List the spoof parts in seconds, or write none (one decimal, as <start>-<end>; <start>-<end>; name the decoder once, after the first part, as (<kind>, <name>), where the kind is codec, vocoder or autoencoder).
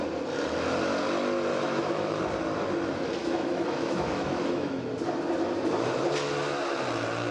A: 1.5-2.2 (autoencoder, DAC-VAE); 3.2-4.8